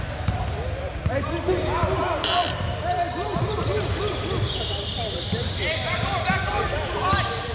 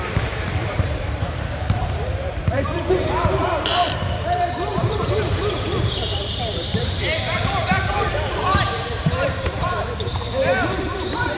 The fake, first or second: second